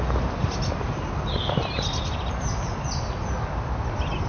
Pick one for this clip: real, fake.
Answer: real